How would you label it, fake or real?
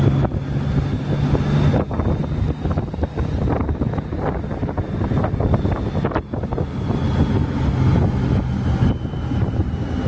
real